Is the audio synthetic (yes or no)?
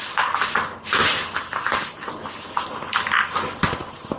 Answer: no